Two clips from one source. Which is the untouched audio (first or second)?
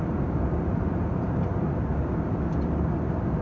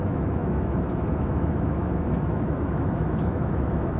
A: first